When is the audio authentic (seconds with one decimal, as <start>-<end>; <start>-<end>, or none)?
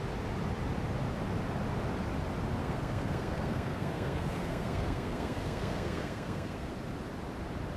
0.0-2.6; 6.7-7.8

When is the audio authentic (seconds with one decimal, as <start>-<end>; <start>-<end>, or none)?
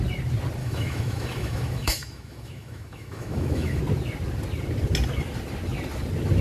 0.0-0.6; 3.8-6.4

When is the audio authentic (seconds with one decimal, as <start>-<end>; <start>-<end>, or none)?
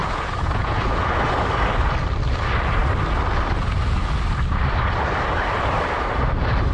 1.1-6.7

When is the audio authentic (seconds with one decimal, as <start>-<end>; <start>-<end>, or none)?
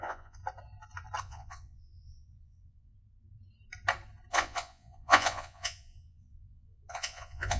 0.4-1.2; 2.9-4.3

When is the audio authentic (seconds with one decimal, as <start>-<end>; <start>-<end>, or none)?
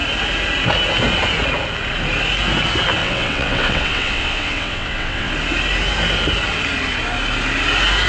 0.0-3.0; 5.3-8.1